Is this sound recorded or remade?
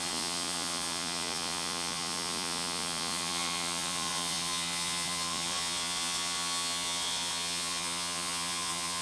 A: remade